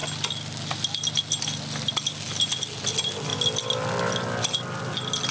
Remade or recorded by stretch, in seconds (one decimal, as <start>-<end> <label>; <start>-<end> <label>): 0.0-5.3 recorded